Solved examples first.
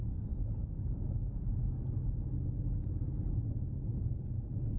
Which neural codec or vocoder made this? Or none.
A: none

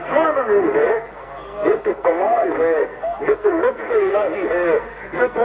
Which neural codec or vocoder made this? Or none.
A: codec, SNAC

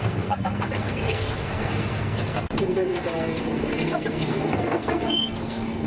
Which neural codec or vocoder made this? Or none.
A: codec, SNAC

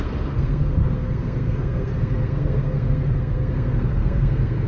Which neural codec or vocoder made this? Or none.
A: codec, SNAC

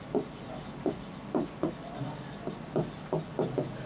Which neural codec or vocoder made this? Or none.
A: none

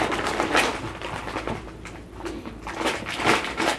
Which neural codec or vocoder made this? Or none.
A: none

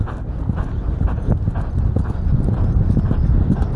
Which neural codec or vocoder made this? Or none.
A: none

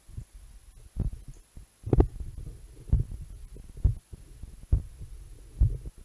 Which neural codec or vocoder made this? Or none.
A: none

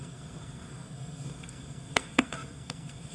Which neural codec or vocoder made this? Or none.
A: codec, SNAC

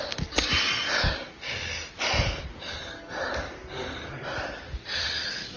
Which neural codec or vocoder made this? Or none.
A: none